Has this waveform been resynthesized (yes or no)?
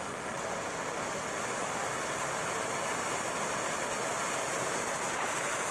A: no